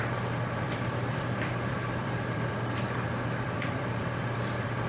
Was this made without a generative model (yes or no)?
no